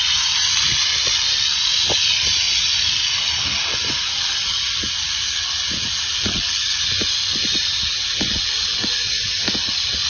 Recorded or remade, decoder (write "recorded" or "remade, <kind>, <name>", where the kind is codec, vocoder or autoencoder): recorded